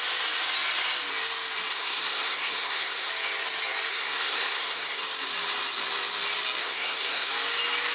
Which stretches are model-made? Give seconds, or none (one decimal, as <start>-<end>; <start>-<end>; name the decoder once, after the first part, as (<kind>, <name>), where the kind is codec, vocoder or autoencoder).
1.7-3.1 (codec, SNAC); 3.9-5.0; 6.6-7.3